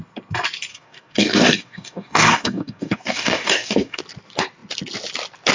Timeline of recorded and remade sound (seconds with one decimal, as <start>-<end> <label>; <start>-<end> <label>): 0.0-0.7 recorded; 0.7-4.0 remade; 4.0-5.5 recorded

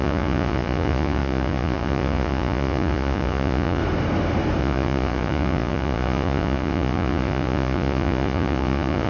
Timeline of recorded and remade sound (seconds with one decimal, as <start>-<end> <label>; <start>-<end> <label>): 0.0-3.8 remade; 3.8-4.6 recorded; 4.6-9.1 remade

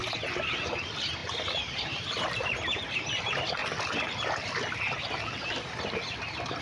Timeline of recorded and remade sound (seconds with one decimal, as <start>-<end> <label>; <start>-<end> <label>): 0.0-6.6 recorded